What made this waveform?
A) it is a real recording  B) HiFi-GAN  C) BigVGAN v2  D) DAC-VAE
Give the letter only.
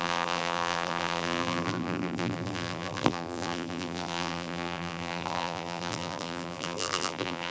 C